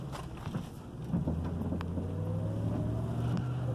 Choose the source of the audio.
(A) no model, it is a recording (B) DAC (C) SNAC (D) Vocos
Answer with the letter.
A